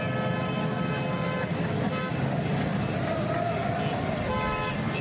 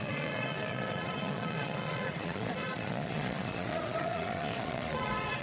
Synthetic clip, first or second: second